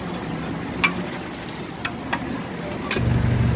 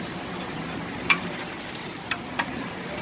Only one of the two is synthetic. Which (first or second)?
second